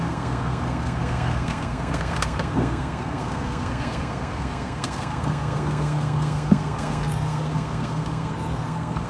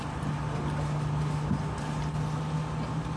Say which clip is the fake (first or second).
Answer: first